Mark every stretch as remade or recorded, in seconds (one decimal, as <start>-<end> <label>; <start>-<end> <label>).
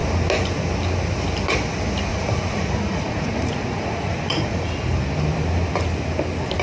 0.0-2.1 recorded; 2.1-4.7 remade; 4.7-6.6 recorded